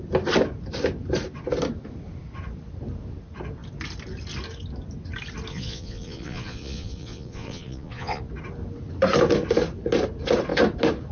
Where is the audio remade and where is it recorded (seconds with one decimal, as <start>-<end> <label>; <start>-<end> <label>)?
0.0-5.5 recorded; 5.5-8.2 remade; 8.2-11.1 recorded